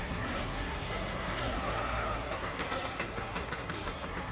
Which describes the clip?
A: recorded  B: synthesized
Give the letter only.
B